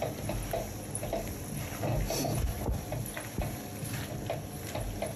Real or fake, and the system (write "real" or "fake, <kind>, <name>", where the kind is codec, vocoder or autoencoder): real